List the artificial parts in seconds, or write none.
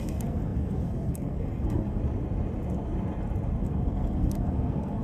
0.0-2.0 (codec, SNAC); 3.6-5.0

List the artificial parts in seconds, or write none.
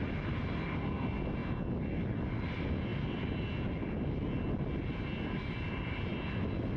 none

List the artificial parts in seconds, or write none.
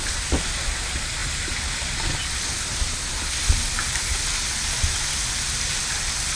none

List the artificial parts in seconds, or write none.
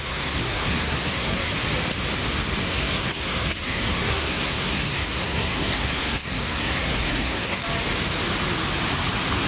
0.0-1.5 (codec, SNAC); 2.6-7.6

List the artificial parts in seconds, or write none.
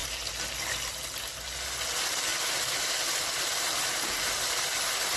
none